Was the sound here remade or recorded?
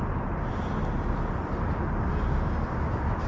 recorded